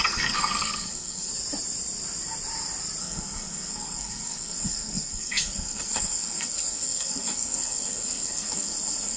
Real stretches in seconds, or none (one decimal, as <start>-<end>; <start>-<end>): 1.3-3.0